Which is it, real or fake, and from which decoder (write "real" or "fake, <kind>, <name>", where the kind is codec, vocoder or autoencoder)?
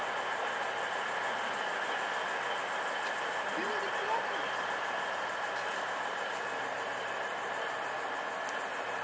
real